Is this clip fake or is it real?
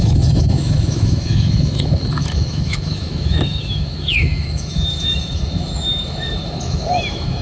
fake